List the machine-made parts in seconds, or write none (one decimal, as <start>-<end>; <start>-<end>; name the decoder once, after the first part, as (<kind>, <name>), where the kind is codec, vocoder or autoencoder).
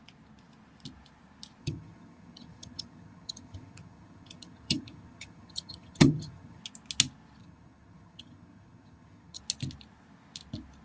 1.6-6.6 (vocoder, HiFi-GAN); 7.4-9.4